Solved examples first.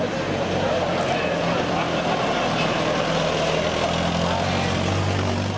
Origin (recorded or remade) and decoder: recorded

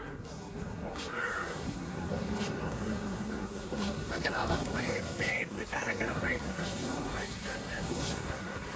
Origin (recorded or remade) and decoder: remade, codec, SNAC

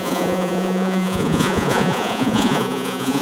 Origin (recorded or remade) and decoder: remade, vocoder, Vocos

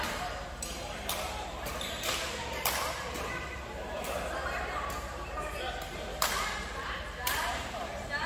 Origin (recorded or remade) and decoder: remade, vocoder, BigVGAN v2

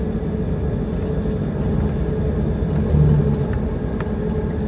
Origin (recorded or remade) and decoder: recorded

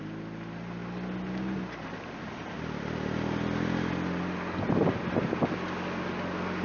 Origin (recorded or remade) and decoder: recorded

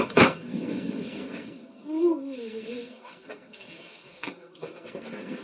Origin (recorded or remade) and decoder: remade, codec, SNAC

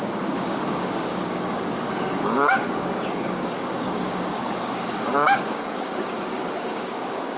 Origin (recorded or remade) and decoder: remade, codec, DAC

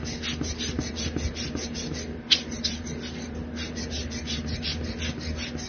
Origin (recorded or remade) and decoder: recorded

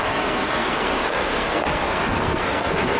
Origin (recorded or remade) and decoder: remade, codec, SNAC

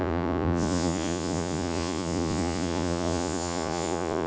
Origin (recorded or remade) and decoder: remade, vocoder, Vocos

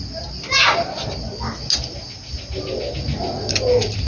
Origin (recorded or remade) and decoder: recorded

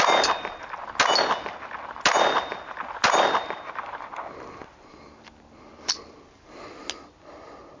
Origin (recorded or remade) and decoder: recorded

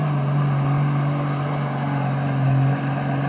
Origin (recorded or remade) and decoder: recorded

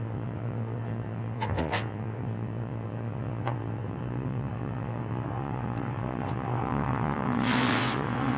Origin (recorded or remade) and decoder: remade, vocoder, WaveNeXt